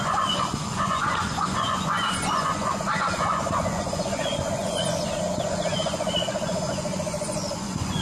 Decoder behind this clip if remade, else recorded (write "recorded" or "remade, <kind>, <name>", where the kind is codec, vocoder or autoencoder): remade, vocoder, Vocos